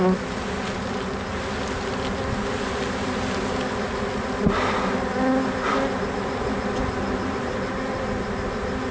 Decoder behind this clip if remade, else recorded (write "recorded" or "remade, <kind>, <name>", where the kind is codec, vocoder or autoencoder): recorded